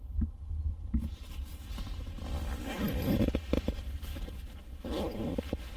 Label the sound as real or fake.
fake